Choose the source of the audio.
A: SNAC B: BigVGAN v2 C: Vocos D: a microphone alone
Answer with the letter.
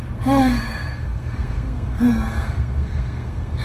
A